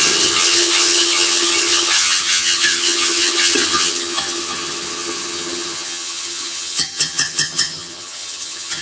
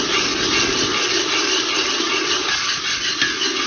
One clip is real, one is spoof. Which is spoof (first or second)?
first